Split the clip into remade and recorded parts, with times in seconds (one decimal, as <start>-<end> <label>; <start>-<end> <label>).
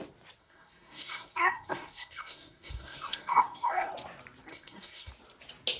0.0-0.4 recorded; 0.4-3.9 remade; 3.9-4.5 recorded; 4.5-5.1 remade; 5.1-5.8 recorded